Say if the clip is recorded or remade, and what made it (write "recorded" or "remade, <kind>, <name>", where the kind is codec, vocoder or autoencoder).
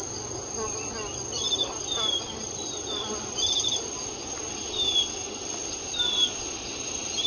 recorded